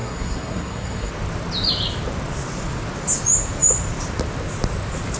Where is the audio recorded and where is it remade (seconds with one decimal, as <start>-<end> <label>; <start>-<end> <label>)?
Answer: 0.0-1.1 remade; 1.1-5.2 recorded